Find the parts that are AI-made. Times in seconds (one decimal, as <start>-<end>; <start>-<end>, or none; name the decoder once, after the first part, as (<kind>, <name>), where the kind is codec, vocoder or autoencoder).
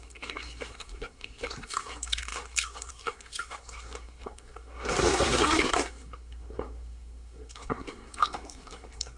0.0-9.2 (codec, SNAC)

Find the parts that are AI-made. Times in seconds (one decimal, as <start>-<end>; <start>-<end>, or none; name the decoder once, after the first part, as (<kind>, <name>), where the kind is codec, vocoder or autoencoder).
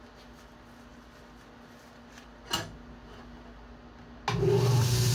none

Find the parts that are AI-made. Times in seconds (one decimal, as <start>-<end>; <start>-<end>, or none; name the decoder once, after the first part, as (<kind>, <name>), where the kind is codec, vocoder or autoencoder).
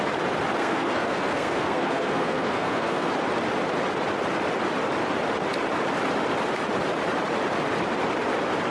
0.6-3.1 (codec, SNAC)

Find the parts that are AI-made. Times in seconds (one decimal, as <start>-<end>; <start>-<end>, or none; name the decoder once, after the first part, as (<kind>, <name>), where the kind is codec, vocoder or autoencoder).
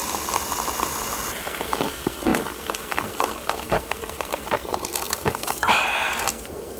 1.4-6.8 (codec, SNAC)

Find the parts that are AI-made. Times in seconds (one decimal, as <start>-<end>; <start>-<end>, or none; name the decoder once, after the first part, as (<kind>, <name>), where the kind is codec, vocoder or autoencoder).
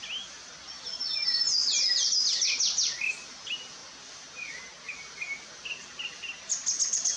none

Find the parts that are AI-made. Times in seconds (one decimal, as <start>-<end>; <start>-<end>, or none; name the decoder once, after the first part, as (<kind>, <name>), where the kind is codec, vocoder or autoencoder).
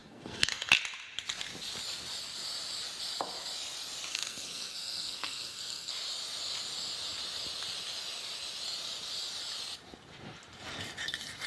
0.0-0.7 (codec, SNAC); 4.1-5.9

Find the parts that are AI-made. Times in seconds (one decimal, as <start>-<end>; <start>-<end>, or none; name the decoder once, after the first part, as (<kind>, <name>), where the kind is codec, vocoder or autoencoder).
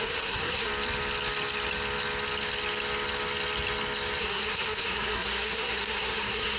0.0-0.7 (codec, SNAC); 4.2-6.6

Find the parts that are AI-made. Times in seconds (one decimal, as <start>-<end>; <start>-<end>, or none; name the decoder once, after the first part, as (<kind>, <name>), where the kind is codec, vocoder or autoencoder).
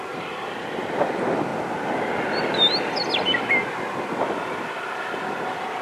none